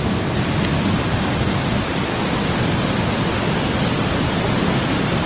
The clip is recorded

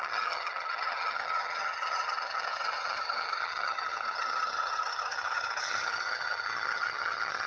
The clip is remade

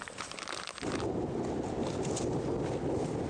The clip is recorded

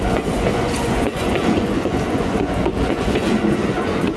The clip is remade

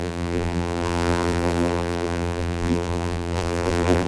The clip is remade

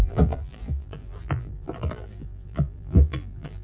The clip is remade